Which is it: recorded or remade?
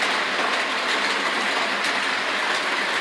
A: recorded